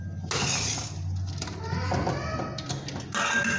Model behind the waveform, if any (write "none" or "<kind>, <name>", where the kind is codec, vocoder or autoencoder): none